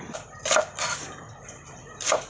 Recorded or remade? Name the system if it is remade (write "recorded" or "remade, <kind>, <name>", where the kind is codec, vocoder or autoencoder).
recorded